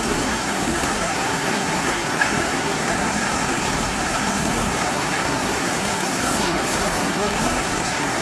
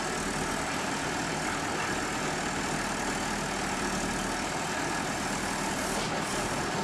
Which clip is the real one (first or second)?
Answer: second